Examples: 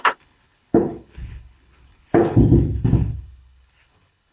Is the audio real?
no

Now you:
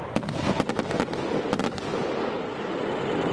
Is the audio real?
yes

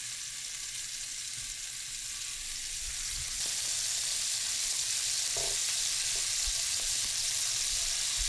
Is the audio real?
yes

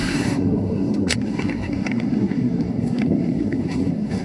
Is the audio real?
no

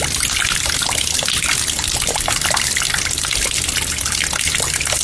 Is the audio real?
yes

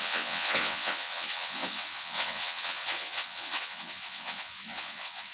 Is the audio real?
no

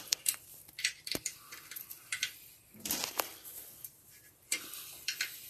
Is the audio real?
no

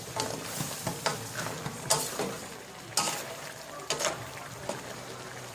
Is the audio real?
yes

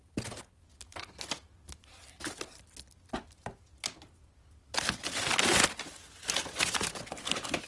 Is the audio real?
yes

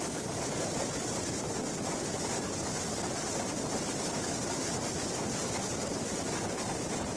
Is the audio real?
yes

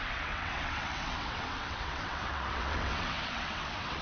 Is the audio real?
no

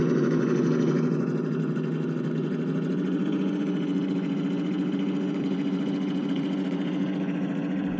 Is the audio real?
no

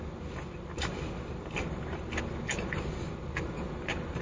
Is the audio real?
yes